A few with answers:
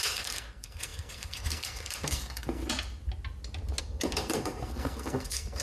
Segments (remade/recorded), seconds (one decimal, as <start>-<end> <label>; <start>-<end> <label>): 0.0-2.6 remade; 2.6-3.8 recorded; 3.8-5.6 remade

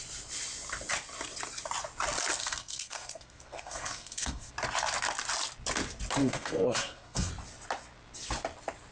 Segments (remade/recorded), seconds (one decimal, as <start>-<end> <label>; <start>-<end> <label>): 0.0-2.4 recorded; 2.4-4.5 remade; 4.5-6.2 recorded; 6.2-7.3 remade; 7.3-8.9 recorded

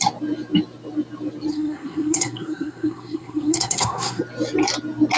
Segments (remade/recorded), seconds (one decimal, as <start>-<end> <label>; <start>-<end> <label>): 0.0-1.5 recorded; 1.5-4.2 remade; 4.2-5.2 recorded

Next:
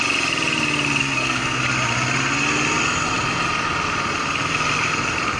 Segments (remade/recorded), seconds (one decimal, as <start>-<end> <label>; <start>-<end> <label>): 0.0-1.0 recorded; 1.0-1.6 remade; 1.6-5.4 recorded

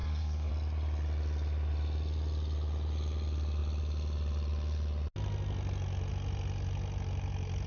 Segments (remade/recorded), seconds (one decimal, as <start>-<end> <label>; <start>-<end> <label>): 0.0-0.5 remade; 0.5-7.7 recorded

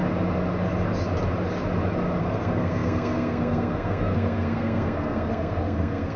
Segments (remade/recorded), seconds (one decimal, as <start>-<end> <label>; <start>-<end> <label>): 0.0-2.2 recorded; 2.2-6.2 remade

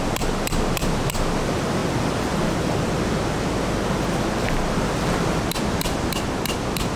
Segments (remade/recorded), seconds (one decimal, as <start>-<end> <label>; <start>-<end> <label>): 0.0-7.0 recorded